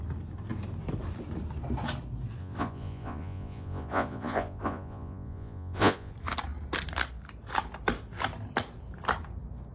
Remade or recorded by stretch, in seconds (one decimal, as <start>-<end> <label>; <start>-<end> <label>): 0.0-2.4 recorded; 2.4-6.1 remade; 6.1-9.7 recorded